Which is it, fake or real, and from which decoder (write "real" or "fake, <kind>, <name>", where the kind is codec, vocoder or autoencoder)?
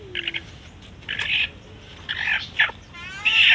real